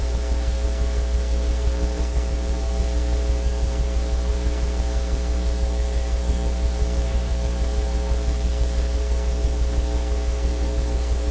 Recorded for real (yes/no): no